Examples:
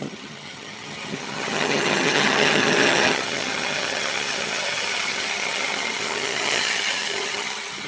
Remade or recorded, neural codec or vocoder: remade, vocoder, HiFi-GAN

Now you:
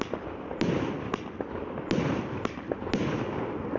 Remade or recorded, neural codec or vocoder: recorded